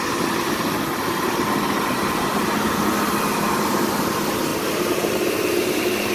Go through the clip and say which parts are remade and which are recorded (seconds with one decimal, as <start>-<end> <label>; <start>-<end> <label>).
0.0-4.5 recorded; 4.5-6.1 remade